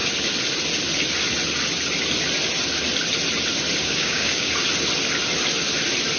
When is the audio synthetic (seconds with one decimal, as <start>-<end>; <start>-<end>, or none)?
3.8-4.5